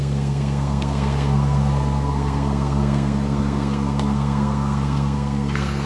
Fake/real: fake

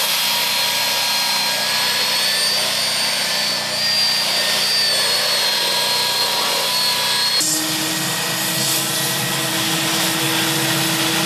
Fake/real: real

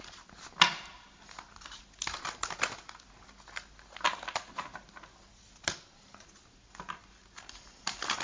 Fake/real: real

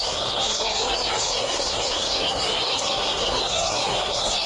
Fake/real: fake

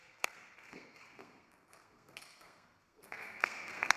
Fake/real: fake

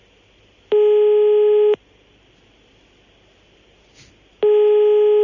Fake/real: real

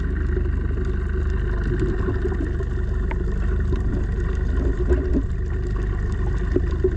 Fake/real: real